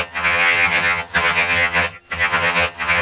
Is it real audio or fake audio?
fake